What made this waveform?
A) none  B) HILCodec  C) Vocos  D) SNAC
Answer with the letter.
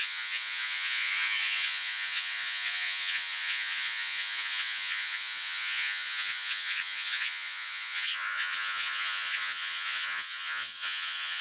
C